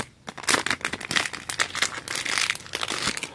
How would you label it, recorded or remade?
recorded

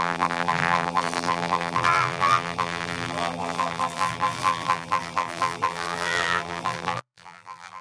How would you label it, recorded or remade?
remade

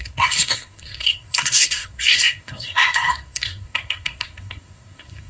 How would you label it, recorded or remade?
remade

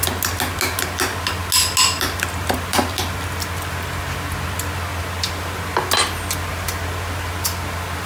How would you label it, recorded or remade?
recorded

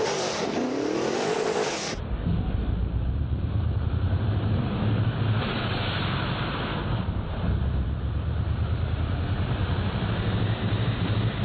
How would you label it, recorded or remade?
remade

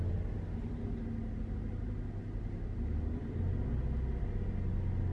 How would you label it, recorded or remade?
recorded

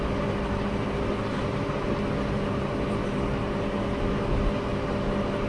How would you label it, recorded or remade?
recorded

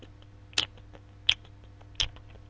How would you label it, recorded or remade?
recorded